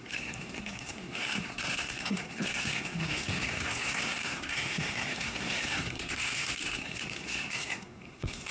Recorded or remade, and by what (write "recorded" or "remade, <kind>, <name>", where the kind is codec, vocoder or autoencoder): remade, codec, SNAC